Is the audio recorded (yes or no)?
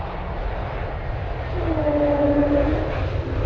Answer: yes